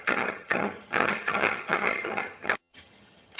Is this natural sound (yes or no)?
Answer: no